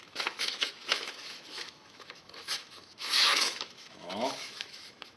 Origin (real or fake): fake